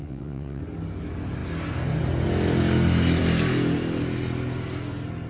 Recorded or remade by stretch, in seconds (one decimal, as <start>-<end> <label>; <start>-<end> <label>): 0.0-0.6 remade; 0.6-5.3 recorded